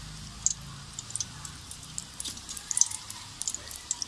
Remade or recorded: recorded